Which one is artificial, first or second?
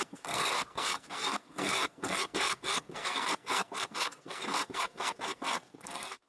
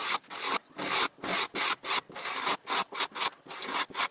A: first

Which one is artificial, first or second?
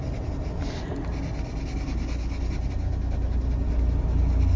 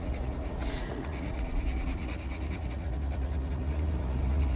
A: second